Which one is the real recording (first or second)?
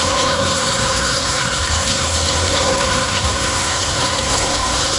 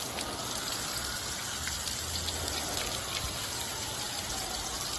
second